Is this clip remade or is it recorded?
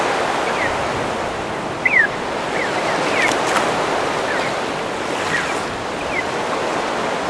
recorded